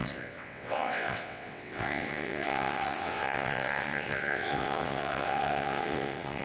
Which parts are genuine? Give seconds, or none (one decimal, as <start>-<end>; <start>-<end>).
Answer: none